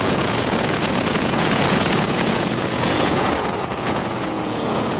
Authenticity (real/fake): fake